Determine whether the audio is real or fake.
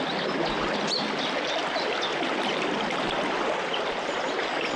real